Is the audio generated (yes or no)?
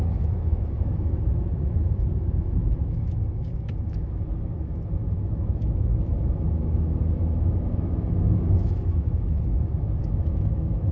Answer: yes